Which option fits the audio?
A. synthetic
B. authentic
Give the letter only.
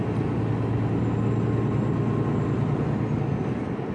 B